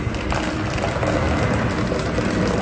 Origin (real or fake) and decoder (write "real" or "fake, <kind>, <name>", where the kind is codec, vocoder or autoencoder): real